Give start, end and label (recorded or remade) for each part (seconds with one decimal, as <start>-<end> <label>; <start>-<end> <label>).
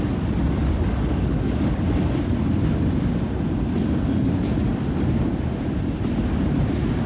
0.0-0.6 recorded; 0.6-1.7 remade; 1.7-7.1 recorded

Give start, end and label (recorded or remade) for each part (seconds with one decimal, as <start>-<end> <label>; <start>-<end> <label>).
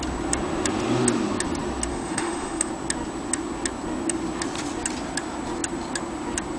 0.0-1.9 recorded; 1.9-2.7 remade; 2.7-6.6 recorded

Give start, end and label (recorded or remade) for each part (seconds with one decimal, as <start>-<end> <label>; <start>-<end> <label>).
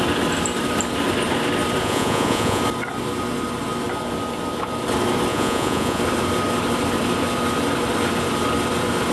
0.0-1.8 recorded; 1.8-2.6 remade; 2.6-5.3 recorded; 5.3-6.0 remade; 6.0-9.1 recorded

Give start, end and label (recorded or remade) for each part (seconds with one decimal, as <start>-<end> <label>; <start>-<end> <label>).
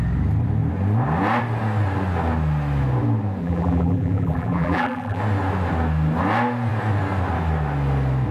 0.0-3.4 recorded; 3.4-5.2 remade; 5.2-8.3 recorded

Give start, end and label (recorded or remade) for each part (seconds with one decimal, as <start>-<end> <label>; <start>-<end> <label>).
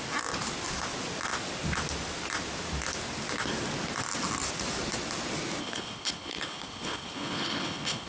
0.0-5.6 recorded; 5.6-8.1 remade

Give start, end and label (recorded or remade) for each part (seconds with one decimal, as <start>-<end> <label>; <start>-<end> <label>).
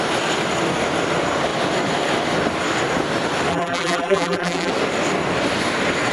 0.0-3.5 recorded; 3.5-4.7 remade; 4.7-6.1 recorded